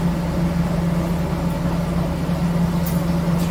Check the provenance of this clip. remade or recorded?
recorded